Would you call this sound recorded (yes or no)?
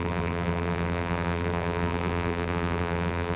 no